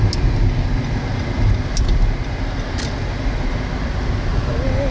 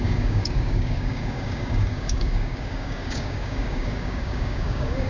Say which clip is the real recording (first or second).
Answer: first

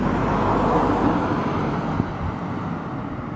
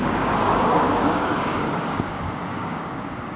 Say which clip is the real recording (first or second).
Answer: first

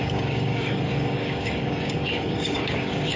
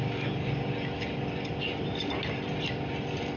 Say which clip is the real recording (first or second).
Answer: second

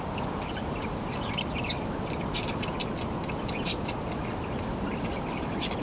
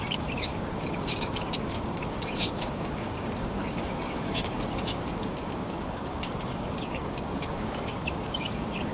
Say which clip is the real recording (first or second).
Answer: first